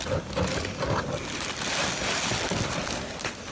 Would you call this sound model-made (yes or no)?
no